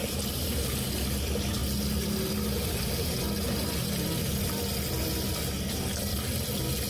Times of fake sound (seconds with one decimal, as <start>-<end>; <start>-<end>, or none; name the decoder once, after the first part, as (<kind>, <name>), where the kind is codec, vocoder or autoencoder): none